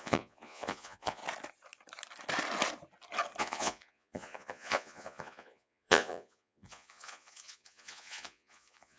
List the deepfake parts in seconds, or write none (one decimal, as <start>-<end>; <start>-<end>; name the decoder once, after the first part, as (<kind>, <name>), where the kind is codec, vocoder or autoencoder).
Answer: 0.0-1.2 (vocoder, Vocos); 3.4-9.0